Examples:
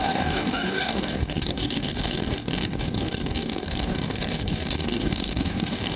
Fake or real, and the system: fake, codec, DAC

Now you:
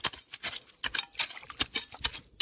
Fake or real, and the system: real